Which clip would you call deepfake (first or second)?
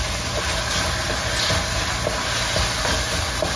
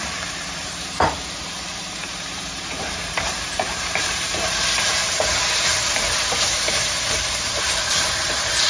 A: second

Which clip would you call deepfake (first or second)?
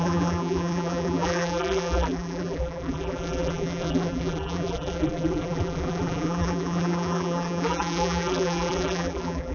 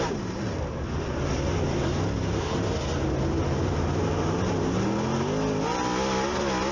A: first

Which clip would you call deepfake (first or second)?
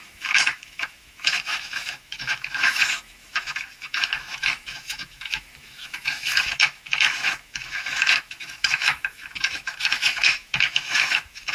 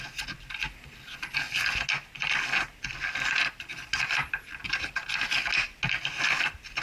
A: first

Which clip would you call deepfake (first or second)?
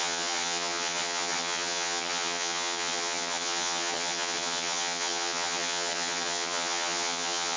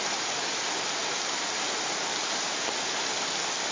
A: first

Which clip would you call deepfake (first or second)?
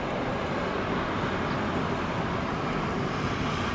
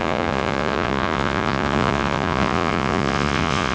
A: second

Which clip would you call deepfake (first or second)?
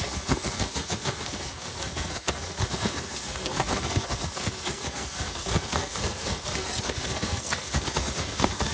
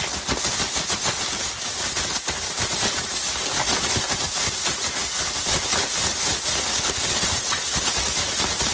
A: first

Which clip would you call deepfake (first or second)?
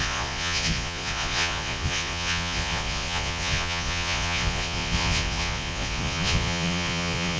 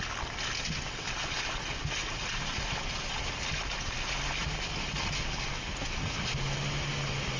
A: first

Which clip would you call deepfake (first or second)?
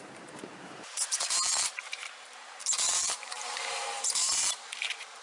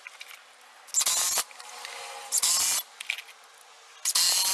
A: first